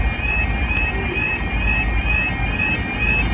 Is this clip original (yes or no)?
yes